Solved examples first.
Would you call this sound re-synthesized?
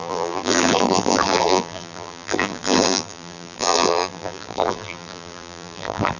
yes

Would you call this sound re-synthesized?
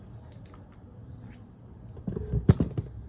no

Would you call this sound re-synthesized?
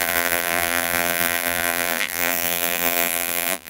yes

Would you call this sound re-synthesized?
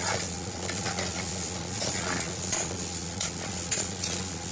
yes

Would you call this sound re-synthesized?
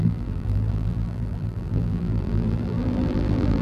yes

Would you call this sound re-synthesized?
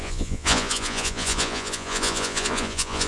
yes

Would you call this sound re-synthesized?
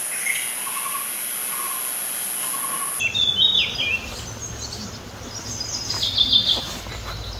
no